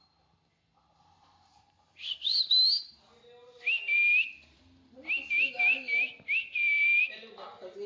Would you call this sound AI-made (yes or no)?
no